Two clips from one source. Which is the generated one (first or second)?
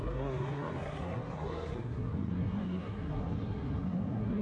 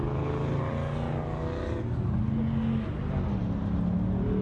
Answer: first